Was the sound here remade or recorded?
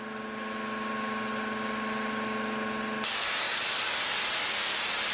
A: recorded